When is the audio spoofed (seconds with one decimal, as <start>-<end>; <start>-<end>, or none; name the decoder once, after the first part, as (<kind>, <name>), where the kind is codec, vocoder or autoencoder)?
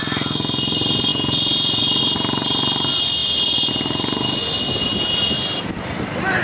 none